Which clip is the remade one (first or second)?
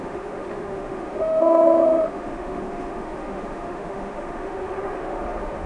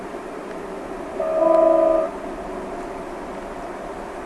first